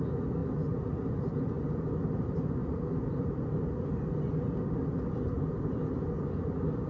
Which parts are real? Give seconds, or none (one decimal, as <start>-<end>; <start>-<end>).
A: 0.0-6.9